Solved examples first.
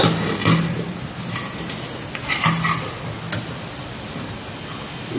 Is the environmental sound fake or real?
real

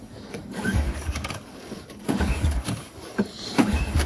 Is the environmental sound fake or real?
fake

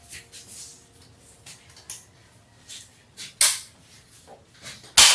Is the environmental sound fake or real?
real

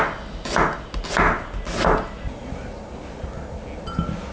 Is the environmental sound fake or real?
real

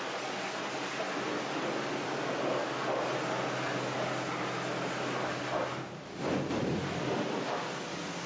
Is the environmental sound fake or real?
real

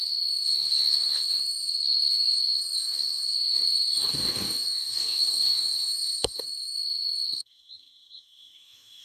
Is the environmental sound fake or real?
fake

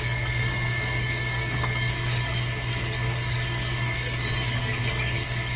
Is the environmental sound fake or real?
fake